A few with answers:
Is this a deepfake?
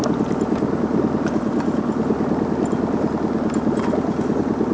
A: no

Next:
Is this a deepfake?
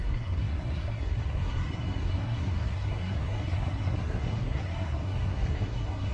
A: yes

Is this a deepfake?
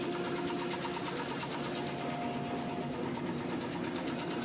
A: no